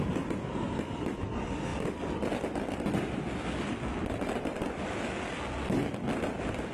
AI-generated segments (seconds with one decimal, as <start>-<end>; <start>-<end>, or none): none